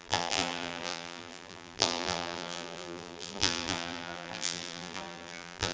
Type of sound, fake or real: fake